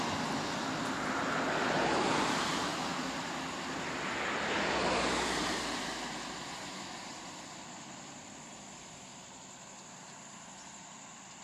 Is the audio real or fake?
real